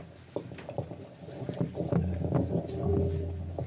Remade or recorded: recorded